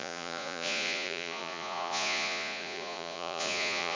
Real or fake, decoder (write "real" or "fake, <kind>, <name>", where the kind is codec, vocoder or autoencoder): fake, vocoder, Vocos